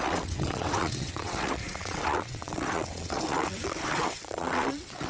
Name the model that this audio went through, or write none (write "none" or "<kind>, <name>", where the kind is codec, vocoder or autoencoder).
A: vocoder, WaveNeXt